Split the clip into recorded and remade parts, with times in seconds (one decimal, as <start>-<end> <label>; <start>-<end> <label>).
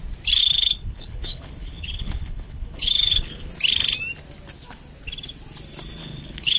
0.0-0.4 recorded; 0.4-3.5 remade; 3.5-6.0 recorded; 6.0-6.6 remade